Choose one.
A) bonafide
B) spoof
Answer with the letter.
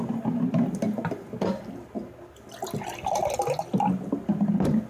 A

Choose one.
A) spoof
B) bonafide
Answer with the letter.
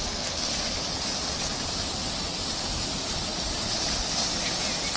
B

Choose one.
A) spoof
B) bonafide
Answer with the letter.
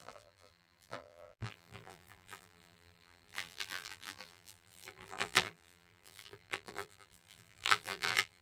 A